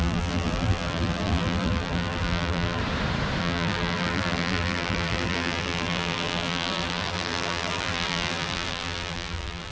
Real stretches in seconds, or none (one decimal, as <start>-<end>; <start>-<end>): 2.8-3.4

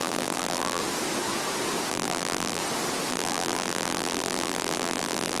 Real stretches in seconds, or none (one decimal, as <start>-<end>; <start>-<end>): 0.8-1.9; 2.6-3.1